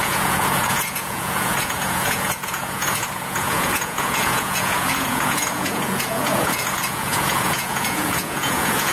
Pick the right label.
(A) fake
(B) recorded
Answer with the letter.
A